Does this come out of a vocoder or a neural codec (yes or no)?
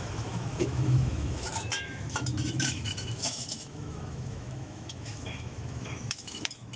yes